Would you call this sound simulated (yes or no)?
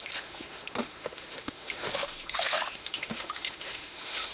yes